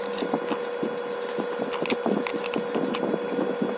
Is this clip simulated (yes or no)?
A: no